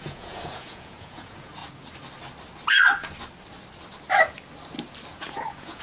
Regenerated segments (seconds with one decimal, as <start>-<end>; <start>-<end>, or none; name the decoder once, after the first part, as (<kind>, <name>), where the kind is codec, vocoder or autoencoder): 0.0-1.6 (vocoder, Vocos); 5.1-5.8